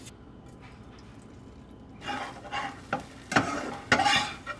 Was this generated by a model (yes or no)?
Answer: no